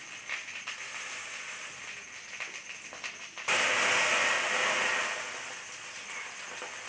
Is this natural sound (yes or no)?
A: yes